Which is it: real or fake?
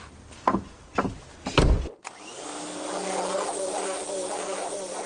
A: real